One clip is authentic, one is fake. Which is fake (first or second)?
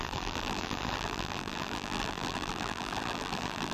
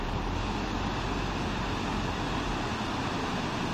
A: first